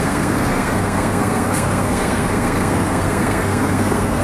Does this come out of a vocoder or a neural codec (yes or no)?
yes